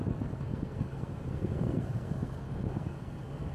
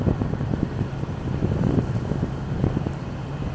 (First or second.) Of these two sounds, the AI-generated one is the first